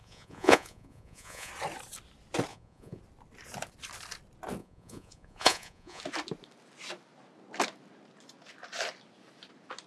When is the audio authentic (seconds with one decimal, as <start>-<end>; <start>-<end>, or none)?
1.5-2.5; 3.0-4.6; 6.0-9.9